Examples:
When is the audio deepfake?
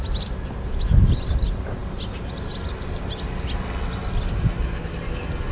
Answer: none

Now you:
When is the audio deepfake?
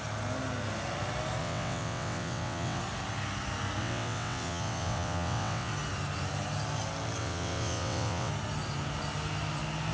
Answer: 1.4-2.8 (vocoder, WaveNeXt); 3.8-5.7; 7.2-8.3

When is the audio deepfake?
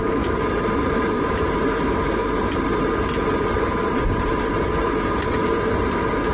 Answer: 0.0-6.3 (vocoder, BigVGAN v2)